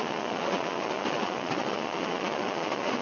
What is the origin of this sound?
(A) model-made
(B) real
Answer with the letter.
A